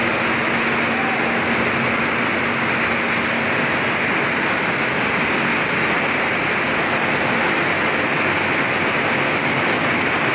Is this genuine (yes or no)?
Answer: yes